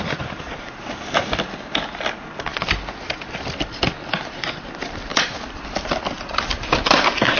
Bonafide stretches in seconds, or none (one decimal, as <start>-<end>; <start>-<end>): 0.0-7.4